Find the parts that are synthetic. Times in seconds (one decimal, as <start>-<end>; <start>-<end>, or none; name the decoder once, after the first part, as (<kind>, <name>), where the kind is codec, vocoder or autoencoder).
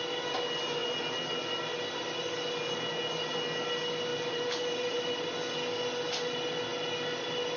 4.1-5.0 (vocoder, BigVGAN v2)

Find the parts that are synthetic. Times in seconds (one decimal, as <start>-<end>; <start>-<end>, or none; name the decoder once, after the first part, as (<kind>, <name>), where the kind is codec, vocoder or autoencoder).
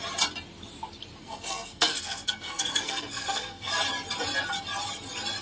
1.2-3.7 (codec, SNAC)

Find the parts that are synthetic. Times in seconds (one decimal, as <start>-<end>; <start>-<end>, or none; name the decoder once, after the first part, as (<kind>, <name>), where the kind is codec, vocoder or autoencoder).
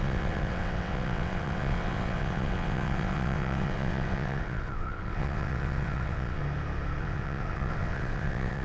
0.0-6.4 (vocoder, WaveNeXt); 7.0-8.6